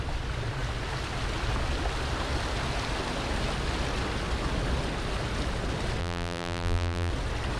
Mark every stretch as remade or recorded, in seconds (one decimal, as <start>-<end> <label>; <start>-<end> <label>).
0.0-6.0 recorded; 6.0-7.1 remade; 7.1-7.6 recorded